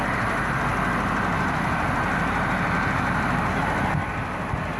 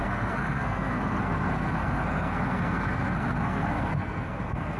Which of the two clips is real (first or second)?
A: first